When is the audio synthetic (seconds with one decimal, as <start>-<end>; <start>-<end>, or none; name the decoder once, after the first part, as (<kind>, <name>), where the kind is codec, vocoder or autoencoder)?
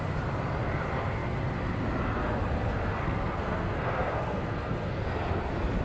3.0-5.0 (codec, SNAC)